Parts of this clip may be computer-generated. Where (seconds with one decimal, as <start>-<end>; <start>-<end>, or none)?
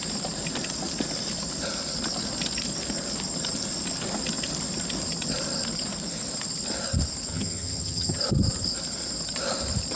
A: 7.3-8.2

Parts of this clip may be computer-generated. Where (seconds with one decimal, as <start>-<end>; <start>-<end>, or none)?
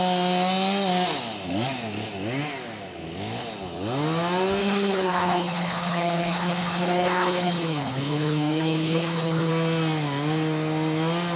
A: 4.6-9.5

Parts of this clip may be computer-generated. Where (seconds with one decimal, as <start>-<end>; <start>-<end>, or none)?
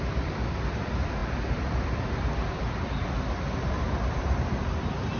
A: 0.0-5.2